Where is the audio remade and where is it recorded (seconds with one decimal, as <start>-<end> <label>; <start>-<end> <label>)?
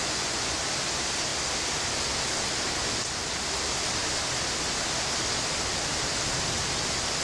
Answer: 0.0-0.6 remade; 0.6-7.2 recorded